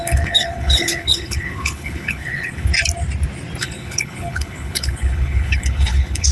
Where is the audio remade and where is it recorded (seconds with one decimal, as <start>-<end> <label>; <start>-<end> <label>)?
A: 0.0-2.7 remade; 2.7-3.6 recorded; 3.6-6.3 remade